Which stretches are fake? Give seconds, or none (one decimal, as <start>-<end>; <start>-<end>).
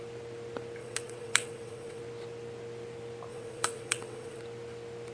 0.8-2.0; 3.3-4.4